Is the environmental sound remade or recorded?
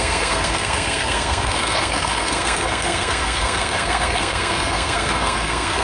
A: remade